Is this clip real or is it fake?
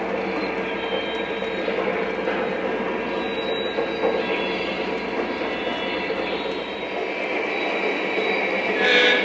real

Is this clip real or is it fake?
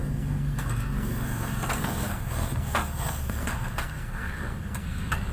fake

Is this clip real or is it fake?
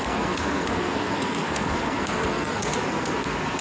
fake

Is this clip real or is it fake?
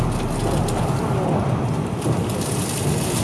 real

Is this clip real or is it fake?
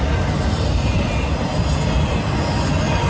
real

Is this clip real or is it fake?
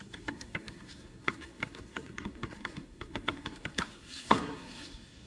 fake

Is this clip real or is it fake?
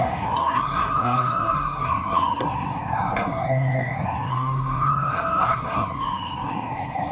fake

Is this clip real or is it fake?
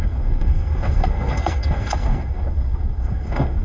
fake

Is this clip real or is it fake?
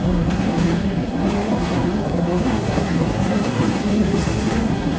fake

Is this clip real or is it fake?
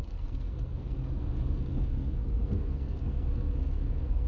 fake